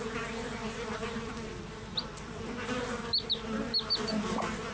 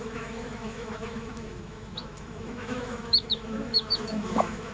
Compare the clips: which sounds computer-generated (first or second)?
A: second